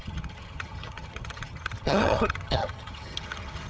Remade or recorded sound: remade